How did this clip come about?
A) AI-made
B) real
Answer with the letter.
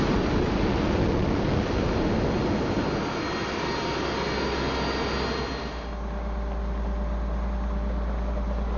B